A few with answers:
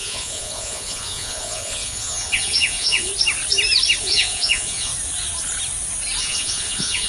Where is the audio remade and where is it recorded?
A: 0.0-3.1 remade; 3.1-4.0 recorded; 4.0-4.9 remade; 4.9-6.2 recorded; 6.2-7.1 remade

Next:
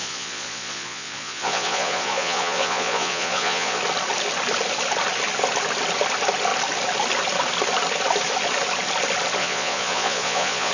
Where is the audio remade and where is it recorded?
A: 0.0-3.8 remade; 3.8-9.4 recorded; 9.4-10.7 remade

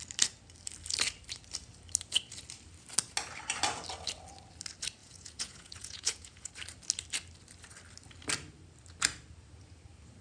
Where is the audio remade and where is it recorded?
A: 0.0-5.0 recorded; 5.0-6.5 remade; 6.5-10.2 recorded

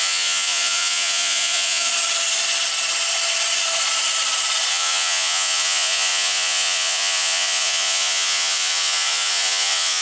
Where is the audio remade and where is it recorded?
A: 0.0-1.9 remade; 1.9-4.7 recorded; 4.7-10.0 remade

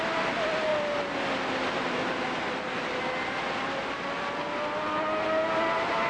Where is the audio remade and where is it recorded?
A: 0.0-6.1 recorded